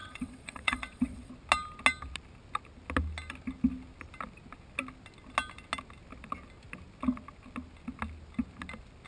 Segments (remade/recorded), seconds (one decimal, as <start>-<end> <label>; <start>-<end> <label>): 0.0-1.3 remade; 1.3-9.1 recorded